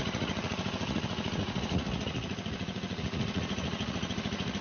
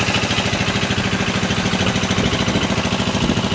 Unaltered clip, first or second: second